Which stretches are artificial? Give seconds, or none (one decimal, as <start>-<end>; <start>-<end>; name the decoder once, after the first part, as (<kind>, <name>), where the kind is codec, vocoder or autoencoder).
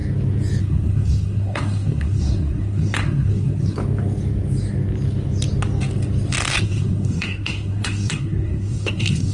0.6-3.8 (codec, SNAC); 6.6-9.3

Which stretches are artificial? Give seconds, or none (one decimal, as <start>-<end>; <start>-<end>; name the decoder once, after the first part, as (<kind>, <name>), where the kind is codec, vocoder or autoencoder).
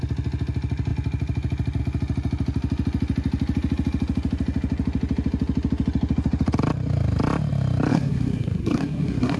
7.9-9.4 (codec, SNAC)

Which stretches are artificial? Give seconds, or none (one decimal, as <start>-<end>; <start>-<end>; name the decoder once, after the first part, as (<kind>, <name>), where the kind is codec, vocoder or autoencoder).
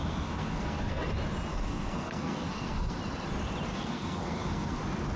0.0-1.0 (codec, SNAC); 1.5-3.0; 3.7-4.8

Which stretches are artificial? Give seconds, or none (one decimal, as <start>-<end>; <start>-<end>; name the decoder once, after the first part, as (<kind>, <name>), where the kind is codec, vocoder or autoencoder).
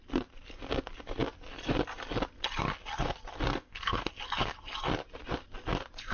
3.5-4.1 (codec, SNAC)